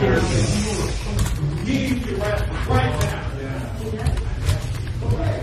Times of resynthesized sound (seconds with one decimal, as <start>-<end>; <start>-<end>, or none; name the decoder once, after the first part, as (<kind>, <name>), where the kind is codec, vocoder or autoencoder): 1.6-2.7 (vocoder, BigVGAN v2)